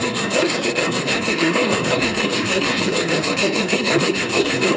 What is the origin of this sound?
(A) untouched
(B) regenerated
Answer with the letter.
B